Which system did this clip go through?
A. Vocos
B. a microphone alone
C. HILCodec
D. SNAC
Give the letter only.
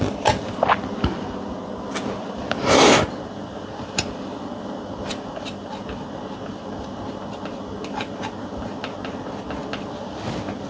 B